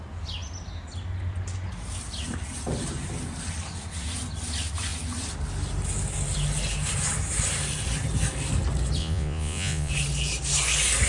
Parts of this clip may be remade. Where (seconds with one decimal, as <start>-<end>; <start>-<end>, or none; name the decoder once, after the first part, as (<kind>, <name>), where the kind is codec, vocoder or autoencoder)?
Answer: 9.0-9.9 (vocoder, Vocos)